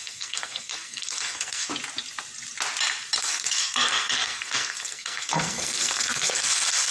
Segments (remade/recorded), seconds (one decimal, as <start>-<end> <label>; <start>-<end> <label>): 0.0-1.7 remade; 1.7-3.2 recorded; 3.2-6.9 remade